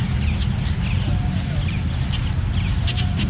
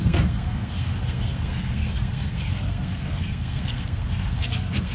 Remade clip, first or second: second